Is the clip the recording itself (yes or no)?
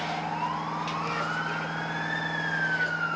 yes